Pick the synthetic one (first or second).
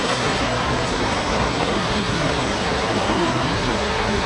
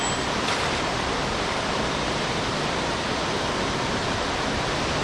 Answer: first